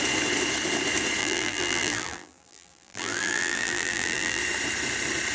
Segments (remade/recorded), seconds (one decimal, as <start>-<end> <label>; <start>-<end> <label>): 0.0-1.2 recorded; 1.2-4.4 remade; 4.4-5.3 recorded